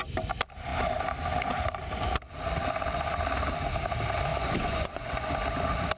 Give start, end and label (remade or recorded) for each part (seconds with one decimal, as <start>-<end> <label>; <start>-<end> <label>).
0.0-4.3 recorded; 4.3-5.3 remade; 5.3-6.0 recorded